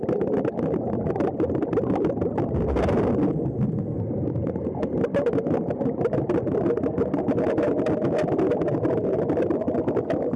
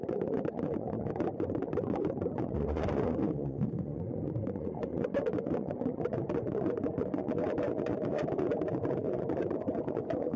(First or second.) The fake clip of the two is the second